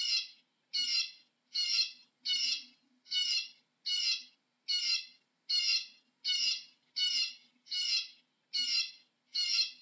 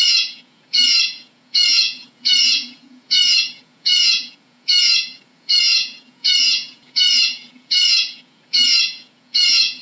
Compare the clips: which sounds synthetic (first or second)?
second